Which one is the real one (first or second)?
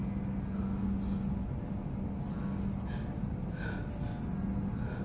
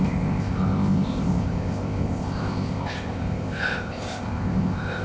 first